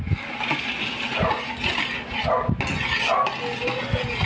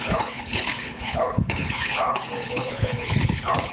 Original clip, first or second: first